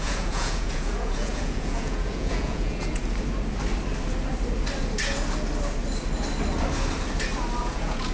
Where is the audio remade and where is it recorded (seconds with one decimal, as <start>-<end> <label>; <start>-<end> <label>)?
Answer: 0.0-3.0 remade; 3.0-7.6 recorded; 7.6-8.1 remade